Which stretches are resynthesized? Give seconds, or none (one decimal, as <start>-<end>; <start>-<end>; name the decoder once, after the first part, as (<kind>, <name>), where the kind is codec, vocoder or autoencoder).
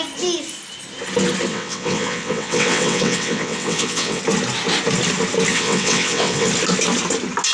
1.5-4.2 (vocoder, WaveNeXt); 5.5-6.5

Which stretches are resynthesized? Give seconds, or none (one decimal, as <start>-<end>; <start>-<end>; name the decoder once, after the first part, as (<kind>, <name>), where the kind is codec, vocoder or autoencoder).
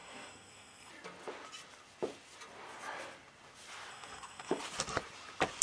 0.0-0.9 (codec, SNAC); 3.9-4.6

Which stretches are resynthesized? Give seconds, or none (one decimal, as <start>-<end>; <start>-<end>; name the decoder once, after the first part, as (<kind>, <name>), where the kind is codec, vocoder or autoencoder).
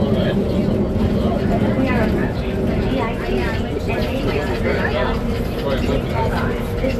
none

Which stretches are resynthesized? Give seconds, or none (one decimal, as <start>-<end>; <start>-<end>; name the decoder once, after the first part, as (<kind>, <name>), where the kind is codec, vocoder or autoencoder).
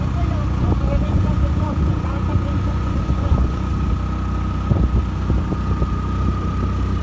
0.0-3.7 (vocoder, Vocos)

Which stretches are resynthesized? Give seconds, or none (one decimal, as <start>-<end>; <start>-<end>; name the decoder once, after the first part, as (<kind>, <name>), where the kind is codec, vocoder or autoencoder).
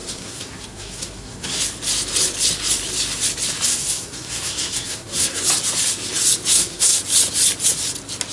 0.0-1.6 (codec, SNAC); 3.7-5.4; 6.5-7.0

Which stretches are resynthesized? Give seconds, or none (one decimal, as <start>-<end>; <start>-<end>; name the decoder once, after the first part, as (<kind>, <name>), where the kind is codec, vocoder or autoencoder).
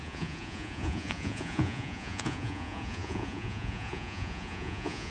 0.0-5.1 (vocoder, Vocos)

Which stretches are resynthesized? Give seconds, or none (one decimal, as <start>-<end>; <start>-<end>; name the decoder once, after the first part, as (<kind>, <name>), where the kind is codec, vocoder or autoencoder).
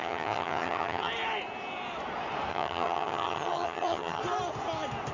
0.0-1.1 (vocoder, HiFi-GAN); 2.5-4.2